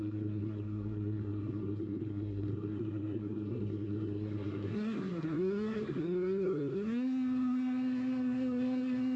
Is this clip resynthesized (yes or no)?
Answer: yes